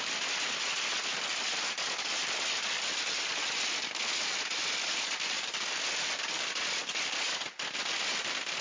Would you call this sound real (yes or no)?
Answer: yes